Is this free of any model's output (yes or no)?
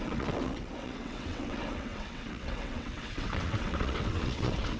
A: no